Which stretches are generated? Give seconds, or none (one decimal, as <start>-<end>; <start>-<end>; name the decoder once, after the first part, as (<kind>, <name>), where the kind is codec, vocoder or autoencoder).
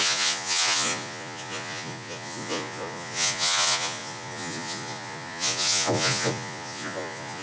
0.0-7.4 (vocoder, Vocos)